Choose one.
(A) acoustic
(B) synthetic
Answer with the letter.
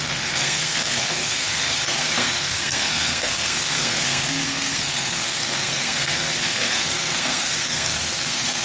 B